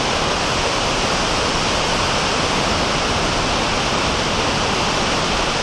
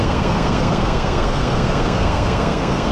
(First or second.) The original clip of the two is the first